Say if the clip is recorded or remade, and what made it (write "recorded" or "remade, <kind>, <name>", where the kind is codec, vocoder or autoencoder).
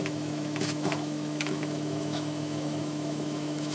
remade, autoencoder, DAC-VAE